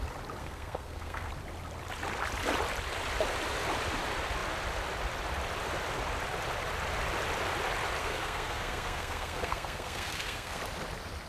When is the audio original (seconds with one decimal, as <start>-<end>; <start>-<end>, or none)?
0.0-0.4; 1.3-8.0; 10.6-11.3